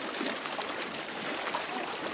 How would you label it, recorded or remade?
recorded